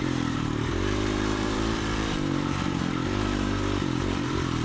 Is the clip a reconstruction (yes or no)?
yes